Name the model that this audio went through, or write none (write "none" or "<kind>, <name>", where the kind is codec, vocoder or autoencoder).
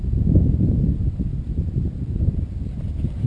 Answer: none